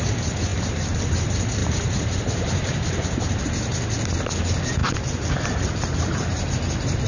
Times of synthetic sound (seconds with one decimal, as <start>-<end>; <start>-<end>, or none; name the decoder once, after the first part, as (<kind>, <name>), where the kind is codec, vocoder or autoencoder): 0.5-1.0 (vocoder, BigVGAN v2); 1.6-3.4; 4.8-6.5